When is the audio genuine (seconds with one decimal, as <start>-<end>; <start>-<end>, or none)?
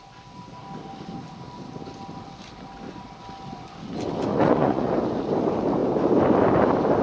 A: 0.0-4.3; 4.9-7.0